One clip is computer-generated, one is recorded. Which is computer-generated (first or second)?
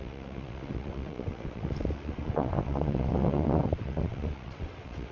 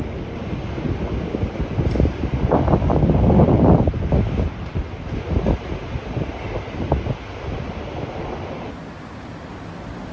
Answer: first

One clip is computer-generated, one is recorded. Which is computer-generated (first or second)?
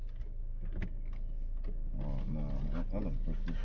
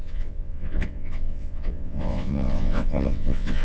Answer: second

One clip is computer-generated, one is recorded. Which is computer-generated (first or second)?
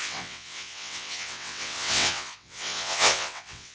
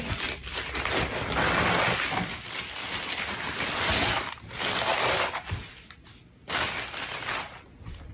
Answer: first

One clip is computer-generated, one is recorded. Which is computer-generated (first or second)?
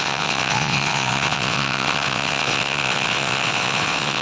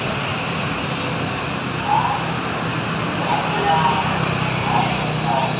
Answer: first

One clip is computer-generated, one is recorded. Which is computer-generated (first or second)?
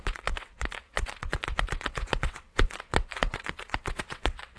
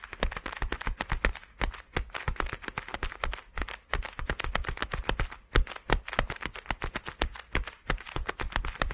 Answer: first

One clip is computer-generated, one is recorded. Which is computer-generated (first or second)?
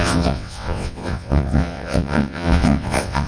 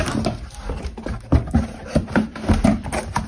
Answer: first